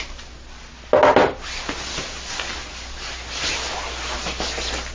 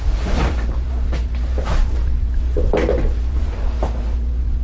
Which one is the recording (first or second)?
first